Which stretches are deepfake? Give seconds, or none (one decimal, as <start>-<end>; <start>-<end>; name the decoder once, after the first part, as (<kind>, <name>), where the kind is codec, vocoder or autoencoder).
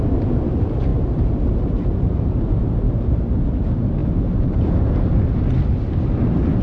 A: 0.9-2.6 (vocoder, BigVGAN v2); 4.0-5.0